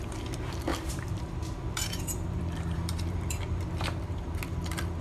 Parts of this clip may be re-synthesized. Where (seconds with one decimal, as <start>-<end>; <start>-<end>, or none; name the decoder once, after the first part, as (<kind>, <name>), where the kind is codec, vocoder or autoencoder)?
0.7-3.7 (vocoder, BigVGAN v2)